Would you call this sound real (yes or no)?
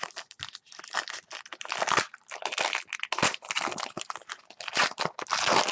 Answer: yes